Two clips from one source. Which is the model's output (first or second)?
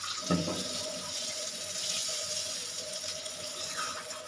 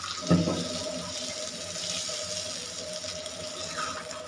first